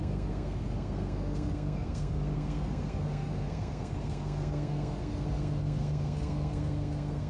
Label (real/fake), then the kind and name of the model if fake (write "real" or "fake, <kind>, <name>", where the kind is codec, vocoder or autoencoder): fake, codec, SNAC